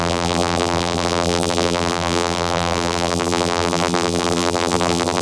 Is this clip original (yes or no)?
no